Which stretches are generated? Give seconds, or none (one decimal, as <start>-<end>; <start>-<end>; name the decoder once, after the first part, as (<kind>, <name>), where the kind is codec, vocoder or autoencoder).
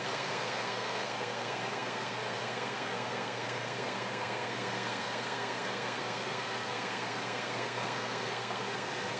0.0-9.2 (codec, SNAC)